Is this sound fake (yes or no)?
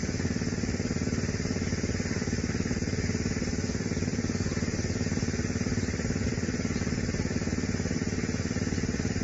yes